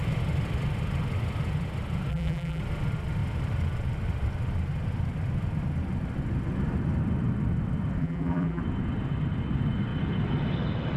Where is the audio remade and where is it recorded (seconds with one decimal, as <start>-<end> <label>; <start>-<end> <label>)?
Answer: 0.0-2.1 recorded; 2.1-2.6 remade; 2.6-8.0 recorded; 8.0-8.6 remade; 8.6-11.0 recorded